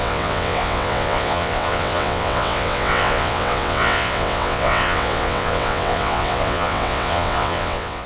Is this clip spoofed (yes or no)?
yes